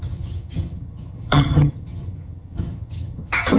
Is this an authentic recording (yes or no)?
no